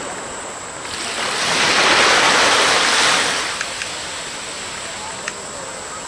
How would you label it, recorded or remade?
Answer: recorded